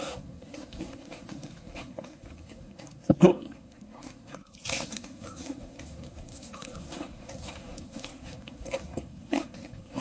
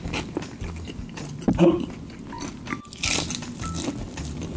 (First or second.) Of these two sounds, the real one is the second